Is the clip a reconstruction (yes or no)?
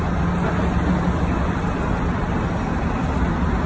no